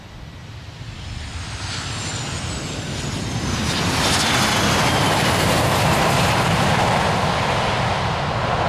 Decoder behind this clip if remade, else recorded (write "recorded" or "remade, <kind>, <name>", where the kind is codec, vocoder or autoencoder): recorded